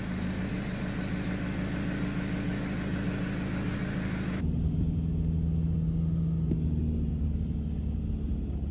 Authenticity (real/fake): real